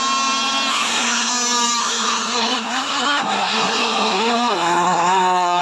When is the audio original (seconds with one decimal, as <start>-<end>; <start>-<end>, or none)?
0.0-0.7; 1.3-1.8